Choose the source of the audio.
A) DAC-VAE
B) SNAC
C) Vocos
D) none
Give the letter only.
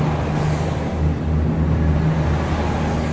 D